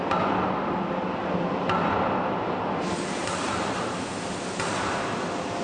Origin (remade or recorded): recorded